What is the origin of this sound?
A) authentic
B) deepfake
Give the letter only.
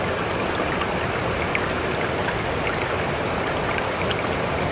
A